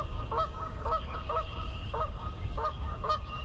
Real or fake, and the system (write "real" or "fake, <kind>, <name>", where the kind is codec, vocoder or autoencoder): fake, codec, DAC